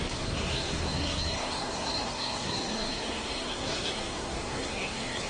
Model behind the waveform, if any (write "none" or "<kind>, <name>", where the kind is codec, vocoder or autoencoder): codec, SNAC